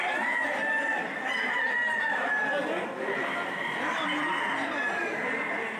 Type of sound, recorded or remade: recorded